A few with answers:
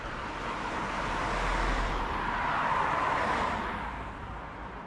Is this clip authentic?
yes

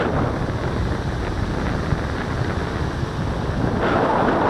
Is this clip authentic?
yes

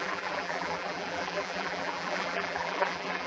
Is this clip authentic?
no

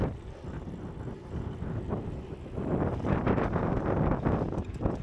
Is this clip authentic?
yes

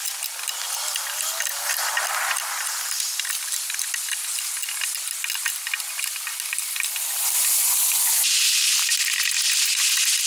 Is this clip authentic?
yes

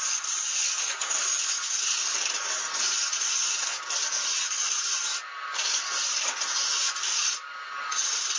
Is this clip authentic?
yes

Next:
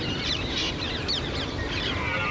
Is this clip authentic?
no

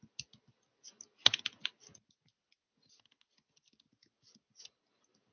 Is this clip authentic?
yes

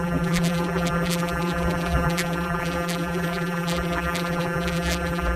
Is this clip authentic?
no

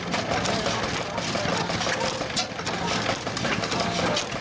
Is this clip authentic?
yes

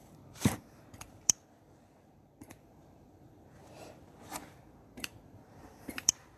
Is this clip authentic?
no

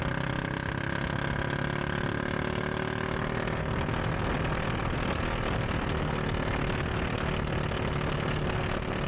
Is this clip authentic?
yes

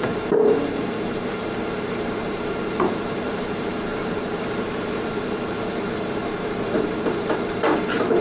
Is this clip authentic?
no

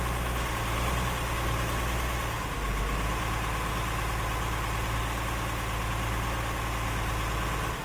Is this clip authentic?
yes